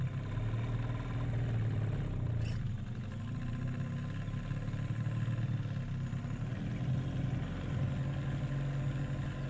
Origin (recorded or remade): recorded